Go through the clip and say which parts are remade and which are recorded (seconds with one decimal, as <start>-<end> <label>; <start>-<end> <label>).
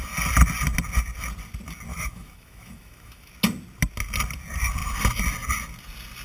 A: 0.0-1.9 recorded; 1.9-3.3 remade; 3.3-6.2 recorded